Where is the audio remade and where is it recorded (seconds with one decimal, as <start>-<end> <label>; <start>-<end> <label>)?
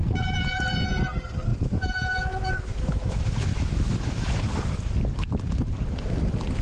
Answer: 0.0-1.5 recorded; 1.5-4.3 remade; 4.3-6.6 recorded